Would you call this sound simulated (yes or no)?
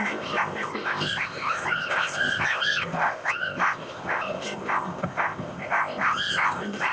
yes